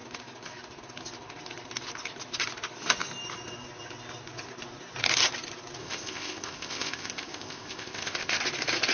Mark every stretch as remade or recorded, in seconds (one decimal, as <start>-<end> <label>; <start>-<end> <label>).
0.0-5.8 recorded; 5.8-8.4 remade; 8.4-8.9 recorded